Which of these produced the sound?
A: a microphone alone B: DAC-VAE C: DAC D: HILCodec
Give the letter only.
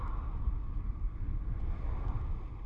A